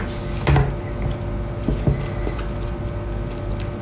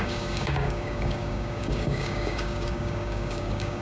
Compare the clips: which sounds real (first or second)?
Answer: first